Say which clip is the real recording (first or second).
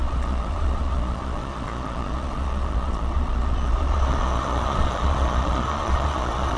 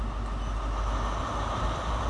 second